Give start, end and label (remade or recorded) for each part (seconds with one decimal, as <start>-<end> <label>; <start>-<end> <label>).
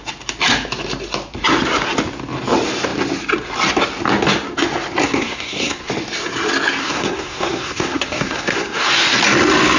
0.0-5.0 recorded; 5.0-5.9 remade; 5.9-6.8 recorded; 6.8-8.9 remade; 8.9-9.8 recorded